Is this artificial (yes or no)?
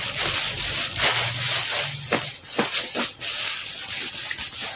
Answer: no